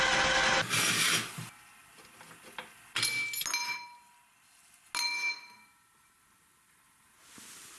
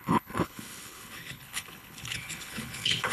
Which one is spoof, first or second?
second